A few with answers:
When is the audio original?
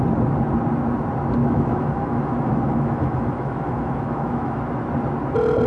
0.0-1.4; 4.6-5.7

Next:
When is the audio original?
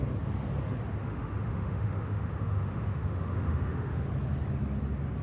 0.0-1.0; 4.1-5.2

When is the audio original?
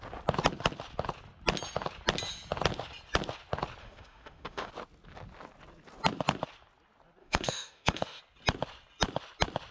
0.0-3.8; 4.7-7.2; 8.2-9.7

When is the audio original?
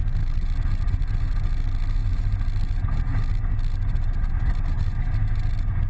0.0-5.9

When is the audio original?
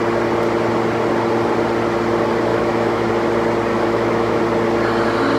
0.0-2.5; 3.1-3.7; 4.4-5.4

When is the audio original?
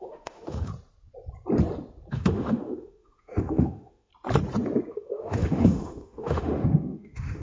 0.7-2.1; 4.1-4.9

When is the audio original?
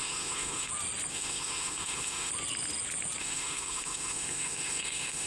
0.7-1.1; 2.3-3.2